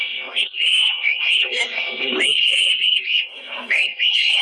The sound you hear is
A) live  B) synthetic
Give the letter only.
B